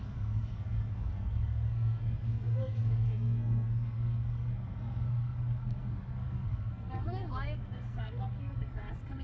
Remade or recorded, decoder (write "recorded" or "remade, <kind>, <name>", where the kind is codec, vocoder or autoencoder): remade, codec, SNAC